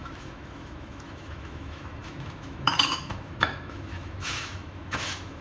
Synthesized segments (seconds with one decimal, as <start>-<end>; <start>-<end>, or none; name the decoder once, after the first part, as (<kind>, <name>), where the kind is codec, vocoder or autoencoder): 0.0-5.4 (autoencoder, DAC-VAE)